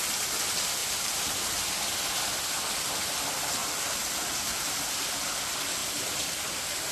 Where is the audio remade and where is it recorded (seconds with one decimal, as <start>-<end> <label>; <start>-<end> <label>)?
0.0-0.8 recorded; 0.8-1.7 remade; 1.7-3.6 recorded; 3.6-5.3 remade; 5.3-5.8 recorded; 5.8-6.9 remade